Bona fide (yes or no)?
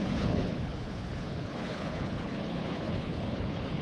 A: no